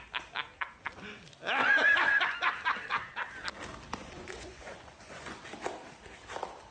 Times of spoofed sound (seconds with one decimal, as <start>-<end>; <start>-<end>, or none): 1.6-2.5; 4.0-5.4